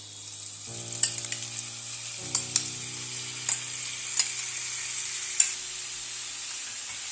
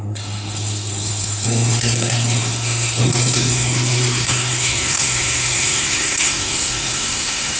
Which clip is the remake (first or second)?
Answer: second